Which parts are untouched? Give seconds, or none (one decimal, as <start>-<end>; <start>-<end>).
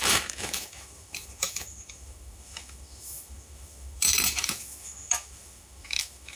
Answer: none